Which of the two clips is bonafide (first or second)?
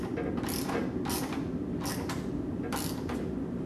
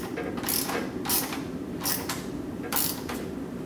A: first